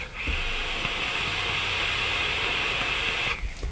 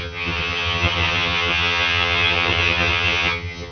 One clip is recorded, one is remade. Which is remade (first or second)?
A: second